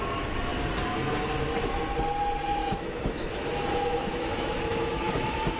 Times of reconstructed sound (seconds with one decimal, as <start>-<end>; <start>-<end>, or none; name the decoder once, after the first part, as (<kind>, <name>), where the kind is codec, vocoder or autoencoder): 2.6-5.6 (autoencoder, DAC-VAE)